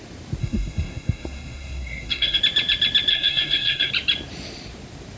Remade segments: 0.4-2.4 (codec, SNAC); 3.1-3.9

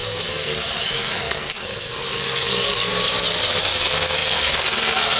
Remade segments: 0.0-2.9 (codec, SNAC); 3.6-5.2

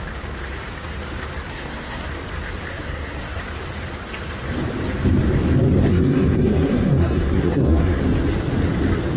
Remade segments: 1.5-2.1 (codec, SNAC); 2.7-3.4; 5.9-8.0

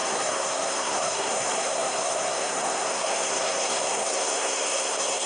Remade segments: 0.0-5.3 (codec, SNAC)

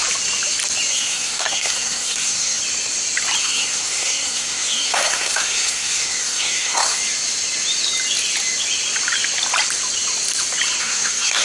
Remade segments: 0.9-2.6 (codec, SNAC); 3.4-7.0; 10.8-11.4